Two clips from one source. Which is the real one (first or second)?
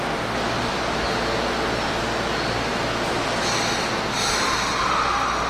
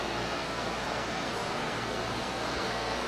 first